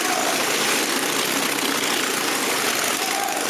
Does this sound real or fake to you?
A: real